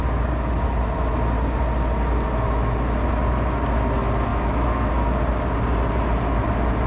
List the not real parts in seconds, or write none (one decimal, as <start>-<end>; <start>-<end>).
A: 4.3-4.9